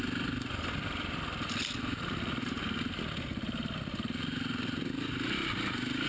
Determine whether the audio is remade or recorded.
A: recorded